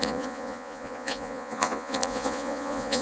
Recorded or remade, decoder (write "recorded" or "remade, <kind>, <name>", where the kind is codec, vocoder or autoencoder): remade, vocoder, Vocos